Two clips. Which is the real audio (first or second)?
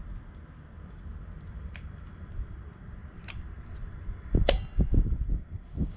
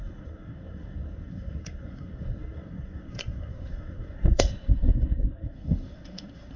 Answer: first